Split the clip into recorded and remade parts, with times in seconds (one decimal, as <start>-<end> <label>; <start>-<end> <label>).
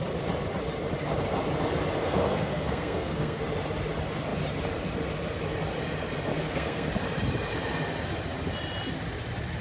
0.0-2.0 recorded; 2.0-3.4 remade; 3.4-6.3 recorded; 6.3-6.9 remade; 6.9-9.6 recorded